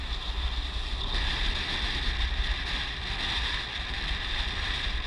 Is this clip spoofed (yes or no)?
no